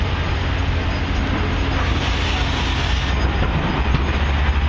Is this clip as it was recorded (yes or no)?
yes